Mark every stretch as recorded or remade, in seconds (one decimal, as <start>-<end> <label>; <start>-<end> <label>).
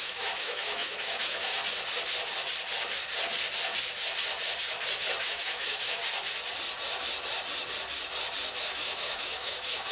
0.0-1.5 remade; 1.5-5.2 recorded; 5.2-6.0 remade; 6.0-8.6 recorded; 8.6-9.9 remade